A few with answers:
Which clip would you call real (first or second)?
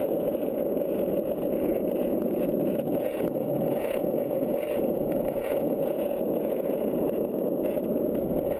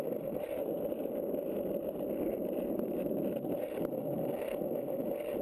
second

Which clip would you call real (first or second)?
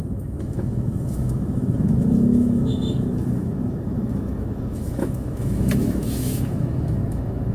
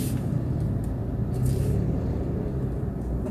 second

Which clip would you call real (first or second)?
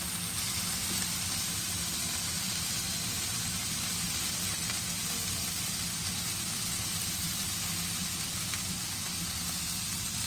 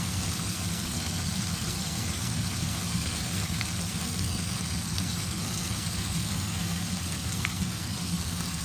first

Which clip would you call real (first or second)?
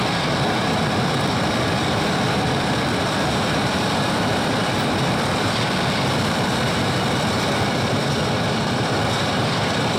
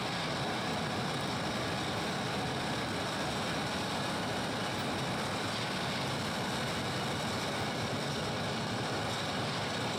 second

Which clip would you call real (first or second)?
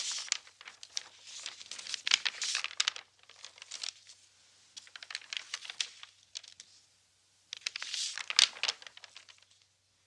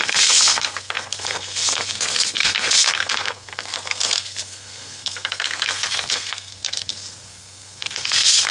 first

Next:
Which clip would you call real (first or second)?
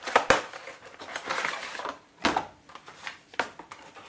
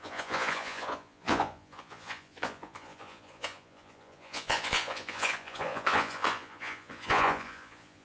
first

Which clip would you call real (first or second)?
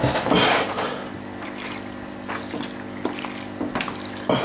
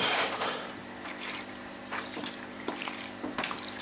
first